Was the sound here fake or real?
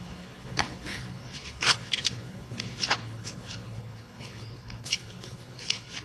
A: fake